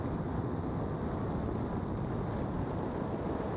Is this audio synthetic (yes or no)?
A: no